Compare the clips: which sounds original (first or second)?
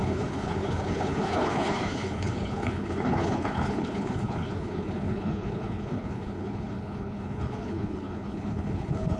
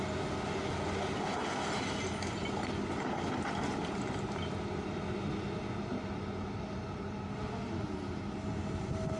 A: second